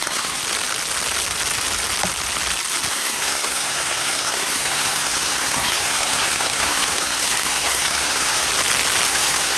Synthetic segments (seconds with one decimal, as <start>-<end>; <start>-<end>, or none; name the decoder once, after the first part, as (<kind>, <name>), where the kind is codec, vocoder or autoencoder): 0.0-0.4 (codec, SNAC); 2.9-8.5; 9.1-9.6